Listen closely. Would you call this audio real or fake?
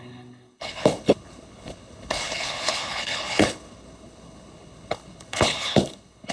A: fake